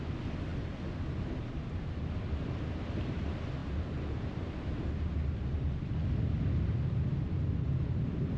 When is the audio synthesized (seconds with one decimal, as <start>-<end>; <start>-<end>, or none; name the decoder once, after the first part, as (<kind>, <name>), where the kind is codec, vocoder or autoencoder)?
none